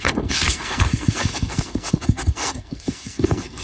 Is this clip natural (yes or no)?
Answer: no